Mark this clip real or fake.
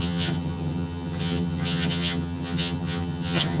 fake